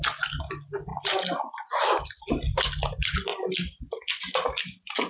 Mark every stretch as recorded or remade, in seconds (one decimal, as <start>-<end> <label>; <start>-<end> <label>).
0.0-5.1 recorded